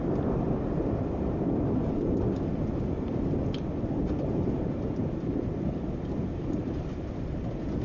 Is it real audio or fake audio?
fake